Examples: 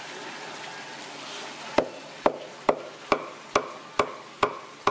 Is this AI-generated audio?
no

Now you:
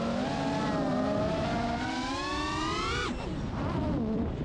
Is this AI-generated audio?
no